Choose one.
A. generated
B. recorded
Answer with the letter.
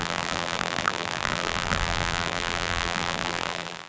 A